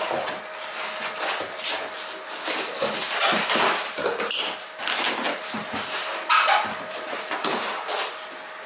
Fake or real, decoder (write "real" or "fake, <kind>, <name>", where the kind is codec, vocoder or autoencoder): real